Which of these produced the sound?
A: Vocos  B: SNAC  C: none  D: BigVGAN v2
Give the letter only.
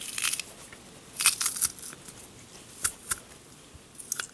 C